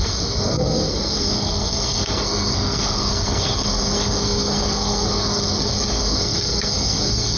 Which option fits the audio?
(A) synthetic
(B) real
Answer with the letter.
A